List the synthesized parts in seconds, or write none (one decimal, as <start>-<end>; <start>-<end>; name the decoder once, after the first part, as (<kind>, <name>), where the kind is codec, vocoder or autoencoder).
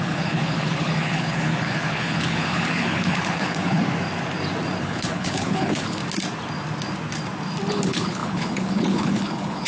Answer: 0.0-3.8 (codec, HILCodec); 4.8-6.0; 7.7-9.7